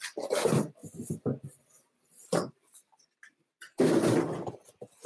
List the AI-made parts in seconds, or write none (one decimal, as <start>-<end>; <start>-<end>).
0.0-0.8; 1.7-5.1